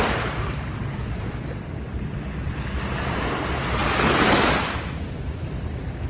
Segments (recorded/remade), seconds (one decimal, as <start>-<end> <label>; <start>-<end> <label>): 0.0-6.1 recorded